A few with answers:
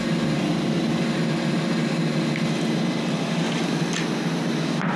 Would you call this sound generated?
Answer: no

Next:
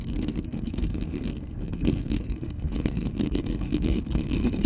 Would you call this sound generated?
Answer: yes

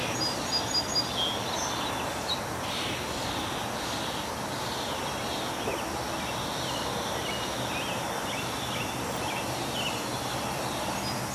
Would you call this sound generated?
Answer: no